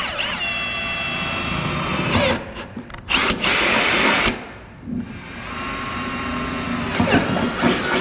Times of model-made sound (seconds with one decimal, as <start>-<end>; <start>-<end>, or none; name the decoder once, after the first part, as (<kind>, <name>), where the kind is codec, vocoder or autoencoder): none